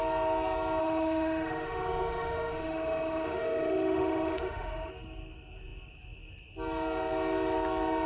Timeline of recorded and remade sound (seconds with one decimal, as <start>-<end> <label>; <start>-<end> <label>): 0.0-0.8 recorded; 0.8-4.9 remade; 4.9-8.1 recorded